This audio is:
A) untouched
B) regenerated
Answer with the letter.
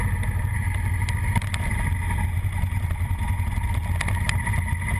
A